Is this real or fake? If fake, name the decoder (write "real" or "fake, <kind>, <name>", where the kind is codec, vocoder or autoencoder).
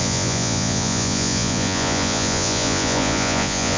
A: fake, vocoder, Vocos